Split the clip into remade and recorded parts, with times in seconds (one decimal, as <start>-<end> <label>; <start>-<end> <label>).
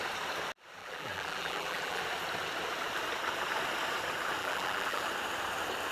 0.0-0.8 recorded; 0.8-2.0 remade; 2.0-4.4 recorded; 4.4-5.0 remade; 5.0-5.9 recorded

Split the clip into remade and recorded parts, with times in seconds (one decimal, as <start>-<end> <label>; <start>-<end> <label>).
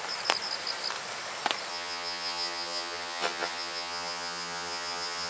0.0-1.7 recorded; 1.7-5.3 remade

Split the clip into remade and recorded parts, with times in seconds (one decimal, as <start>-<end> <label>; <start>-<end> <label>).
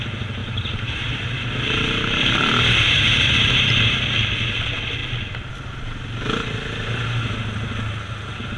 0.0-0.4 recorded; 0.4-3.9 remade; 3.9-8.6 recorded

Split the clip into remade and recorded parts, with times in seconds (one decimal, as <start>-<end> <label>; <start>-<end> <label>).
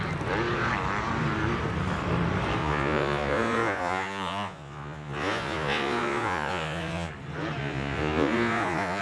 0.0-2.6 recorded; 2.6-7.1 remade; 7.1-7.6 recorded; 7.6-9.0 remade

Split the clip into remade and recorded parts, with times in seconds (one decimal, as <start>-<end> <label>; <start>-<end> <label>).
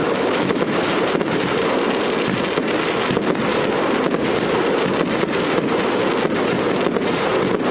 0.0-0.9 remade; 0.9-7.7 recorded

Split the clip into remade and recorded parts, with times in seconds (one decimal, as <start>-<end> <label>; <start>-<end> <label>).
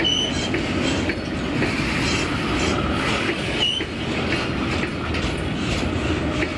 0.0-6.6 recorded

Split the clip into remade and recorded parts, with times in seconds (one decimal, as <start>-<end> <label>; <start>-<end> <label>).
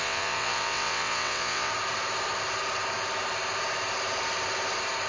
0.0-1.7 remade; 1.7-5.1 recorded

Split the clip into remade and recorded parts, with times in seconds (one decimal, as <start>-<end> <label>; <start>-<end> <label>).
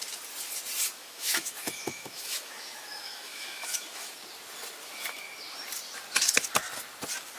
0.0-1.0 recorded; 1.0-4.1 remade; 4.1-7.4 recorded